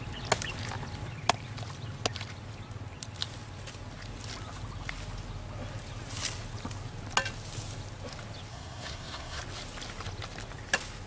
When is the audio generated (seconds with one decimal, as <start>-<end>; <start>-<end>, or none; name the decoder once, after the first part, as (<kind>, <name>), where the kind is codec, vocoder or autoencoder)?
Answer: 8.5-9.4 (codec, SNAC)

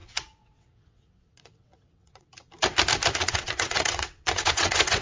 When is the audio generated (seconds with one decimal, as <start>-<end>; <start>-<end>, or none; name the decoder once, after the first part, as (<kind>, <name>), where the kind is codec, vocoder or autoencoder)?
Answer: 0.0-2.3 (vocoder, WaveNeXt); 3.2-5.0

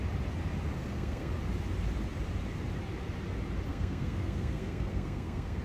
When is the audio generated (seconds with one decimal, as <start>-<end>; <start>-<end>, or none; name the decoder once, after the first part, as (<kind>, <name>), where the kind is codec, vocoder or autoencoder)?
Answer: 0.8-1.3 (codec, SNAC); 3.7-5.6

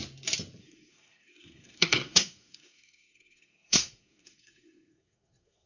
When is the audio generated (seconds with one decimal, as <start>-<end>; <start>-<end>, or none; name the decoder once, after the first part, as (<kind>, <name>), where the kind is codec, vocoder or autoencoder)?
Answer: 0.6-5.7 (codec, SNAC)

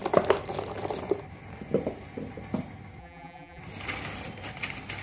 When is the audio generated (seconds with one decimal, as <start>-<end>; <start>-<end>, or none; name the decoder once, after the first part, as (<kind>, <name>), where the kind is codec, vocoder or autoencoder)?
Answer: 3.0-3.6 (vocoder, BigVGAN v2)